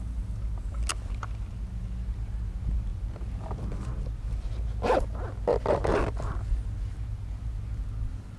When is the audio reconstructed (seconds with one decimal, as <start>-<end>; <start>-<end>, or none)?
none